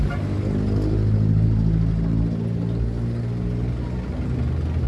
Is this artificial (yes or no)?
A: no